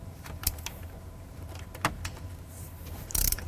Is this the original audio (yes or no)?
no